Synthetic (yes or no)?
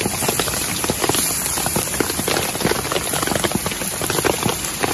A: no